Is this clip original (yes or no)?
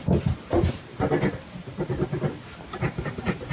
yes